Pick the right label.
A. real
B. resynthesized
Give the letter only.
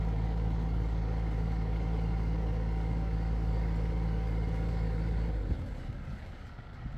B